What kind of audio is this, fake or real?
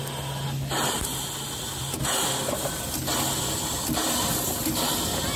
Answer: real